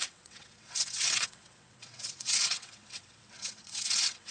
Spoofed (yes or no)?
yes